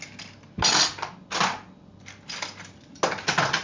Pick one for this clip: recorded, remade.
recorded